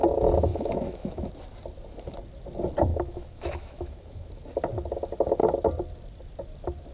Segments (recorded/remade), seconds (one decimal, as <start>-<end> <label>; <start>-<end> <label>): 0.0-0.5 recorded; 0.5-1.3 remade; 1.3-2.9 recorded; 2.9-4.3 remade; 4.3-6.9 recorded